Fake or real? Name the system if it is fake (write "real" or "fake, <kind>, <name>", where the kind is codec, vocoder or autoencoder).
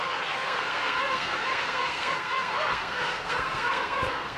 fake, codec, SNAC